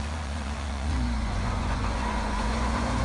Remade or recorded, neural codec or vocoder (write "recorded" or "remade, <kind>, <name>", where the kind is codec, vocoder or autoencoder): remade, vocoder, Vocos